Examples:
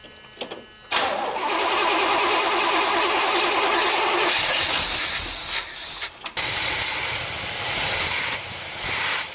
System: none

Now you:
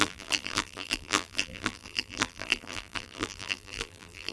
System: vocoder, BigVGAN v2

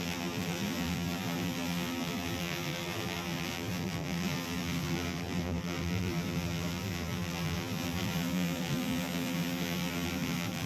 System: vocoder, BigVGAN v2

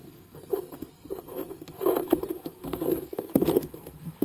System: codec, SNAC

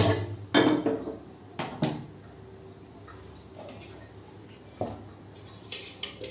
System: none